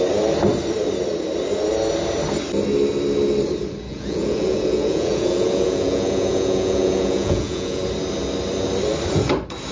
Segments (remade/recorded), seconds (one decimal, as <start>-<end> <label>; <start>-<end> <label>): 0.0-3.9 recorded; 3.9-7.8 remade; 7.8-9.7 recorded